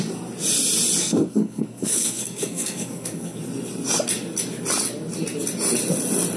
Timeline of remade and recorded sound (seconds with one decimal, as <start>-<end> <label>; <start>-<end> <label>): 0.0-1.0 recorded; 1.0-3.4 remade; 3.4-6.4 recorded